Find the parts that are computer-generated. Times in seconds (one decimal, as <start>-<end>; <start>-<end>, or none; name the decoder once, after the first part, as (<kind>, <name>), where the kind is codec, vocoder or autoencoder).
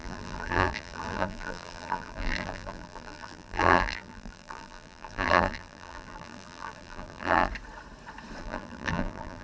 0.0-7.5 (vocoder, BigVGAN v2); 8.4-9.4